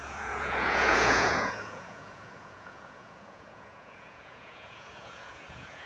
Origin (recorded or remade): remade